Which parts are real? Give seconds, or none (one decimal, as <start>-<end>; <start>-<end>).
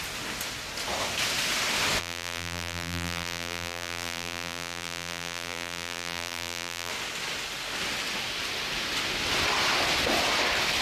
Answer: 0.0-2.0; 6.9-10.8